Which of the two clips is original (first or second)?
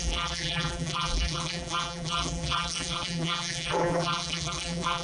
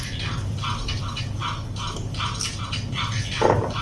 second